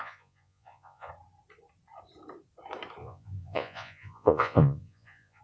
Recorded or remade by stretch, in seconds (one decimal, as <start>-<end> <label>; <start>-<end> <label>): 0.0-1.1 remade; 1.1-3.0 recorded; 3.0-5.4 remade